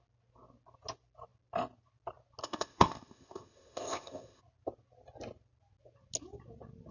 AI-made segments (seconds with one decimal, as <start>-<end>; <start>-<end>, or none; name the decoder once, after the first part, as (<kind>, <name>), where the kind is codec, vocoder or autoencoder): 2.4-4.4 (codec, ZipCodec)